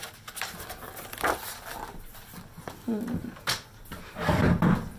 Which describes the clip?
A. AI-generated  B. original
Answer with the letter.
B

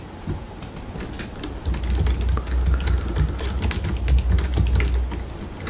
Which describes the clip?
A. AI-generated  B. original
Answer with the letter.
B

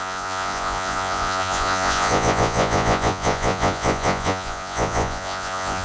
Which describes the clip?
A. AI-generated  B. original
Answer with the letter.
A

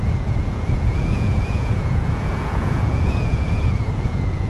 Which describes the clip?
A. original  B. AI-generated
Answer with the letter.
B